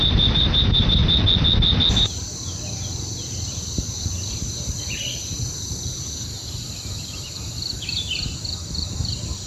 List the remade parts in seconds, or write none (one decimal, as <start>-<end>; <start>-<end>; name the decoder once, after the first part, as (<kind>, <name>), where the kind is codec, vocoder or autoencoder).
0.0-1.0 (vocoder, BigVGAN v2); 1.9-9.5

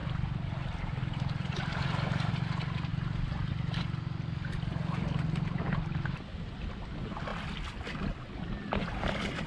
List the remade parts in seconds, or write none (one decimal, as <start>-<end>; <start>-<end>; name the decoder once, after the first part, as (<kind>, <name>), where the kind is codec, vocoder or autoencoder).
0.0-2.3 (vocoder, BigVGAN v2); 2.9-3.5

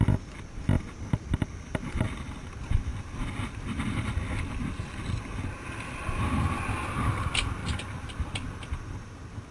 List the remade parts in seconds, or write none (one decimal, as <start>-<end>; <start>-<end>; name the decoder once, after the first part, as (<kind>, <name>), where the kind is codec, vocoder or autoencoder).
7.6-8.5 (vocoder, BigVGAN v2)

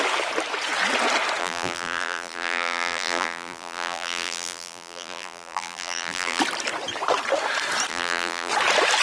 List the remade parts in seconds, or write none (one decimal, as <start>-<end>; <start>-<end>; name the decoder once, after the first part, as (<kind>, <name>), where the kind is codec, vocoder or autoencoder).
1.4-6.4 (vocoder, BigVGAN v2); 7.9-8.5

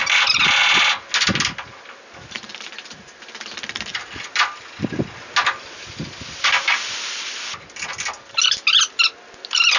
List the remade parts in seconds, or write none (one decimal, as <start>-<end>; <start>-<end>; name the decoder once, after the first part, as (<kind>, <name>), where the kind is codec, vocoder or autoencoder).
none

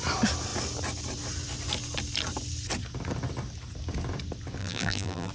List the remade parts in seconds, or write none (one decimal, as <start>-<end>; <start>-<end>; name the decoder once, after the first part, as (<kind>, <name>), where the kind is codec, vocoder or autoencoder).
4.6-5.3 (vocoder, BigVGAN v2)